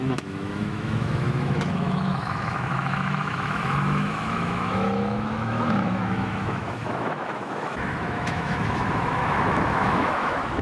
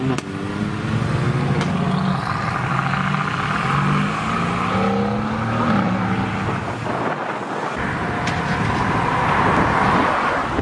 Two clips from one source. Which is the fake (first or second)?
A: first